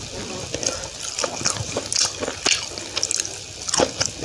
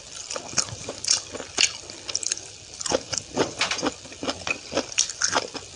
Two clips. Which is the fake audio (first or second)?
second